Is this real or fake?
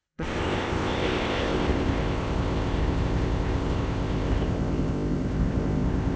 fake